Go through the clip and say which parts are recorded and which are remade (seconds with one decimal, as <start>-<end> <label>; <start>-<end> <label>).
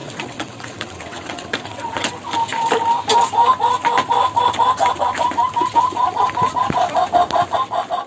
0.0-2.1 remade; 2.1-8.1 recorded